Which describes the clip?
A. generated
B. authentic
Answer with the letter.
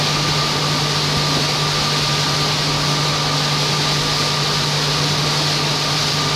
B